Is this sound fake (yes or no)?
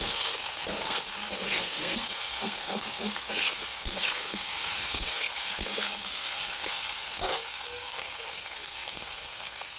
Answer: yes